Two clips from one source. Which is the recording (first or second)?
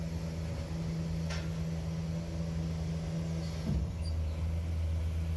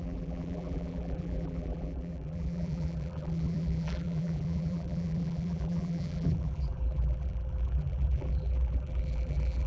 first